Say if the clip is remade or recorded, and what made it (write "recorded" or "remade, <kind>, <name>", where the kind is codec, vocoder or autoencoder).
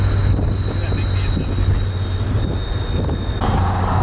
recorded